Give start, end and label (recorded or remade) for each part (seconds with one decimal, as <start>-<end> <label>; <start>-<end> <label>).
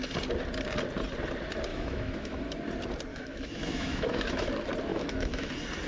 0.0-1.7 recorded; 1.7-2.4 remade; 2.4-3.1 recorded; 3.1-4.5 remade; 4.5-4.9 recorded; 4.9-5.5 remade; 5.5-5.9 recorded